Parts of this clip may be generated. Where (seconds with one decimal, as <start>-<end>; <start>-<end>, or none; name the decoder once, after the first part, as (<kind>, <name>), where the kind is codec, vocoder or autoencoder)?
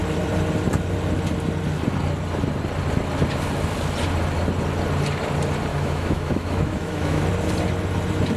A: 5.7-7.2 (autoencoder, DAC-VAE)